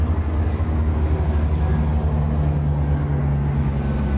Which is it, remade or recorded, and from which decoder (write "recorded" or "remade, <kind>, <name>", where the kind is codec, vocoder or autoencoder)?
recorded